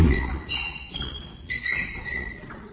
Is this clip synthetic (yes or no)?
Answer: yes